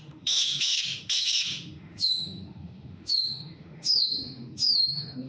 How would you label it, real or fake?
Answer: fake